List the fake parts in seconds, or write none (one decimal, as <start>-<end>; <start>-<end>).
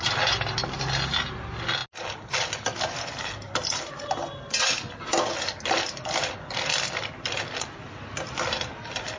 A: none